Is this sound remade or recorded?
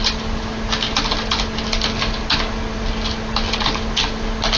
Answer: recorded